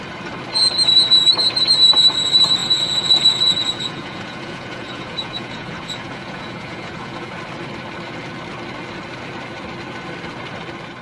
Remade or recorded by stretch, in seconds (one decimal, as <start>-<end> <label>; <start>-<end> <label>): 0.0-2.6 recorded; 2.6-7.4 remade; 7.4-11.0 recorded